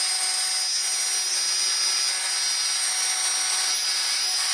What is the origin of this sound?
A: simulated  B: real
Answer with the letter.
B